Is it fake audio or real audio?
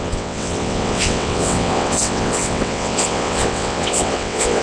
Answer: fake